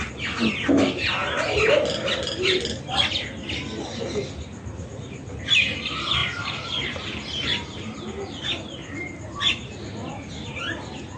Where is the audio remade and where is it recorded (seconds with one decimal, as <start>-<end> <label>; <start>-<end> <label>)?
0.0-6.2 recorded; 6.2-10.3 remade; 10.3-11.2 recorded